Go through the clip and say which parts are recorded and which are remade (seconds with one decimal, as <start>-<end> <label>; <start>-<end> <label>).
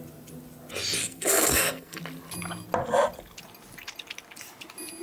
0.0-1.0 recorded; 1.0-2.0 remade; 2.0-5.0 recorded